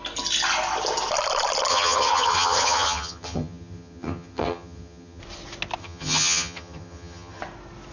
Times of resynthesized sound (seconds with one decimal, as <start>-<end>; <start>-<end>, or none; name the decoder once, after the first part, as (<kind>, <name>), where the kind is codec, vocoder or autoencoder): 1.7-5.2 (vocoder, HiFi-GAN); 5.8-7.4